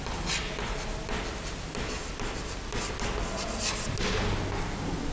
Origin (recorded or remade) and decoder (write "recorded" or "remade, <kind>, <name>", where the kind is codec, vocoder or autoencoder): recorded